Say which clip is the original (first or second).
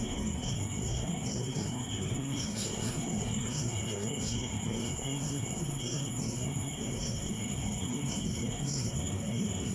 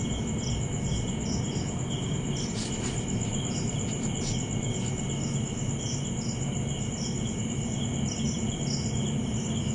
second